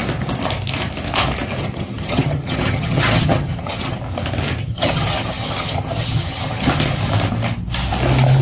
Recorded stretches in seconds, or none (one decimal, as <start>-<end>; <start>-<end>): 0.0-1.6; 4.0-4.6; 6.7-8.4